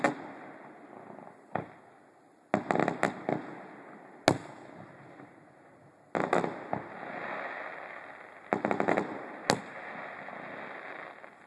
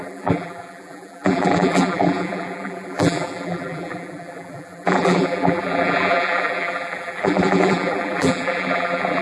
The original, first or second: first